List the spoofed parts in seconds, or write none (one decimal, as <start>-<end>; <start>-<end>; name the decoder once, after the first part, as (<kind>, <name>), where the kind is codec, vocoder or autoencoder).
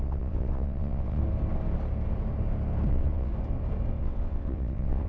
0.0-1.2 (vocoder, WaveNeXt); 2.9-3.3; 4.0-5.1